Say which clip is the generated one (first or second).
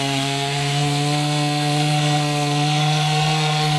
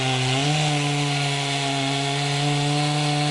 first